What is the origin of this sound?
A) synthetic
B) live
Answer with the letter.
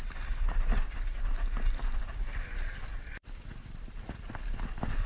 B